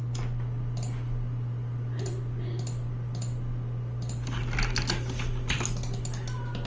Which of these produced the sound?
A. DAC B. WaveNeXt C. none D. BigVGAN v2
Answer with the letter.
C